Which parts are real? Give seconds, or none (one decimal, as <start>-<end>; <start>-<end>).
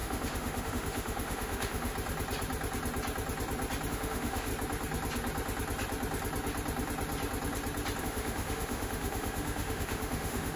1.9-3.9; 4.5-8.0